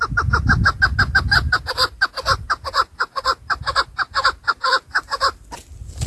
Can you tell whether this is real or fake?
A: real